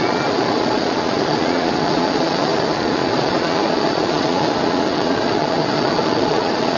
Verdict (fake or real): fake